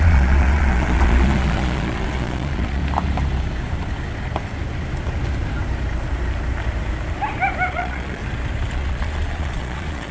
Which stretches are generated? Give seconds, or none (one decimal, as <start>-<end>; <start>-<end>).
0.0-2.8; 7.7-8.2; 8.7-10.1